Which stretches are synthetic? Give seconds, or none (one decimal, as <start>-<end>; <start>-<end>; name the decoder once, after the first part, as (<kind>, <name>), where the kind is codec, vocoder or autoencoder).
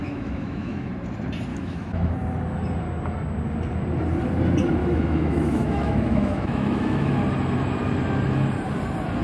0.0-0.9 (autoencoder, DAC-VAE); 1.5-2.1; 4.8-7.2